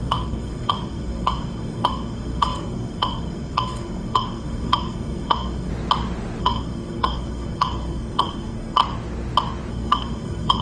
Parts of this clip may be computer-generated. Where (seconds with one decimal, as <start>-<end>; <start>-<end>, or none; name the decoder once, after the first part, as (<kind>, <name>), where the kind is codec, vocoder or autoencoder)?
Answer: 0.0-5.7 (codec, SNAC); 6.4-8.8; 9.7-10.6